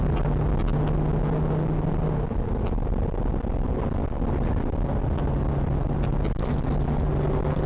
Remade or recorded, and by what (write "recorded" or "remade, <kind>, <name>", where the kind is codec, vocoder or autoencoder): recorded